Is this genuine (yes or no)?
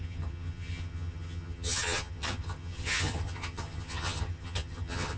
no